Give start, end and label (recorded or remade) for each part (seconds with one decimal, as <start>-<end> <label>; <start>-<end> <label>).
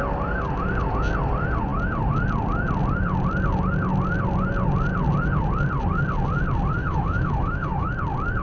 0.0-6.8 recorded; 6.8-7.9 remade; 7.9-8.4 recorded